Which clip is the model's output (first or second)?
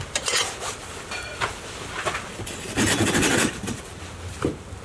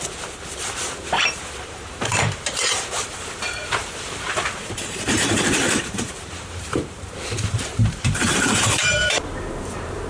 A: second